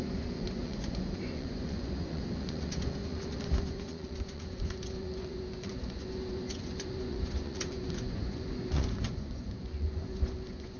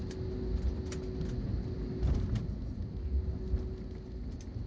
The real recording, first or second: second